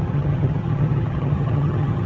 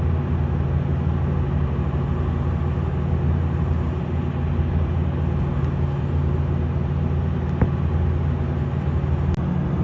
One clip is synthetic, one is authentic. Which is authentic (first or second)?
second